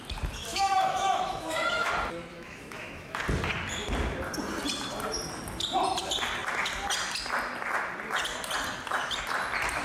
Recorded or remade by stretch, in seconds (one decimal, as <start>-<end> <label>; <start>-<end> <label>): 0.0-0.5 recorded; 0.5-1.9 remade; 1.9-2.3 recorded; 2.3-3.2 remade; 3.2-9.8 recorded